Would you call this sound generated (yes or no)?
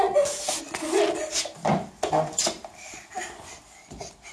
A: no